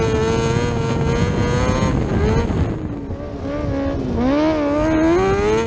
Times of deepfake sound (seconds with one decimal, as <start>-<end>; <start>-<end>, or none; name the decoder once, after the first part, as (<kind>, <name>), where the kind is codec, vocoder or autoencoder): none